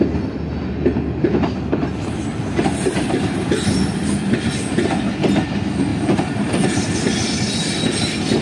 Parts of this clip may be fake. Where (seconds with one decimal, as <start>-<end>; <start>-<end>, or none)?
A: 2.3-3.3; 5.9-6.8